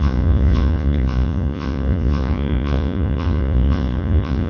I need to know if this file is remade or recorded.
remade